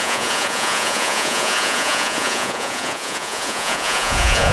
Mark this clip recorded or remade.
remade